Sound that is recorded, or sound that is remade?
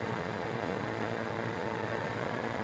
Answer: remade